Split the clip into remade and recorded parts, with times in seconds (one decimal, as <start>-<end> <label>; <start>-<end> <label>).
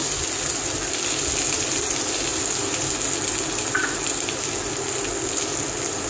0.0-6.1 recorded